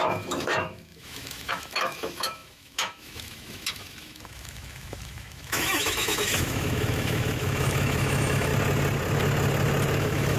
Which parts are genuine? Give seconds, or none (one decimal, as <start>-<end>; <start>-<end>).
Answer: 8.5-10.0